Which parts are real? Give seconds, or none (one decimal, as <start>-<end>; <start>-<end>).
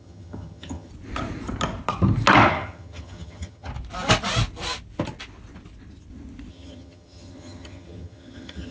0.9-2.5; 3.7-6.5